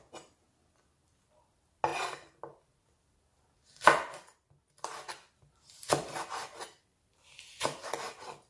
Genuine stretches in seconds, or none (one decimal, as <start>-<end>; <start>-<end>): 0.0-8.5